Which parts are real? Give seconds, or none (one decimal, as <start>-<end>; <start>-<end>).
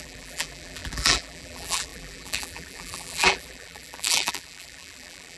none